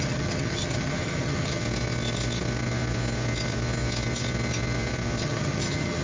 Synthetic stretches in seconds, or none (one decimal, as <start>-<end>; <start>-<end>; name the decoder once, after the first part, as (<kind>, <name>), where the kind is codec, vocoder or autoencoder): 0.0-1.6 (vocoder, HiFi-GAN); 5.2-6.0